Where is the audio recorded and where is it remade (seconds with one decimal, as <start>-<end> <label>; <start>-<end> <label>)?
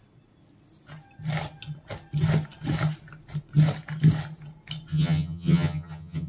0.0-4.9 recorded; 4.9-6.3 remade